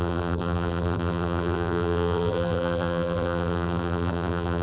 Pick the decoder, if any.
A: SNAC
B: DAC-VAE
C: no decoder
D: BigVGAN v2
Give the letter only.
D